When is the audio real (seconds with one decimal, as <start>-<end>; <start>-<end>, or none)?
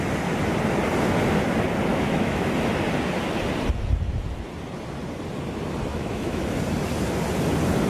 0.0-1.9; 2.5-5.9; 6.4-7.9